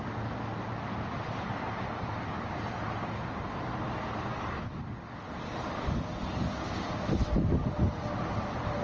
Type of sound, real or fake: real